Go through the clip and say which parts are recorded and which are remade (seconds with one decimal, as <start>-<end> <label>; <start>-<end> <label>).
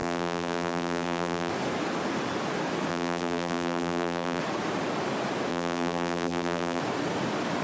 0.0-1.5 remade; 1.5-2.9 recorded; 2.9-4.4 remade; 4.4-5.5 recorded; 5.5-6.8 remade; 6.8-7.6 recorded